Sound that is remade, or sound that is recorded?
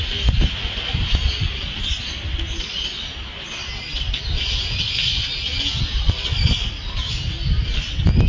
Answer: recorded